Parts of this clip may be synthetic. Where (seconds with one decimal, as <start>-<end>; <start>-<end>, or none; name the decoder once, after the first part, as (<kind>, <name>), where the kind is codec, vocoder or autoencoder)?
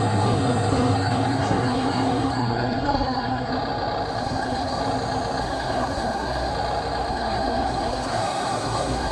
0.0-3.5 (codec, SNAC); 4.2-4.8; 5.4-6.5; 7.1-9.1